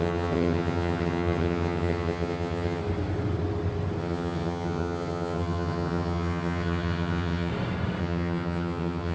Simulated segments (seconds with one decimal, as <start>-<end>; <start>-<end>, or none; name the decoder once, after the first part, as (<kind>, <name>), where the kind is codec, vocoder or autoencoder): 0.0-2.8 (vocoder, HiFi-GAN); 4.0-7.5; 8.0-9.1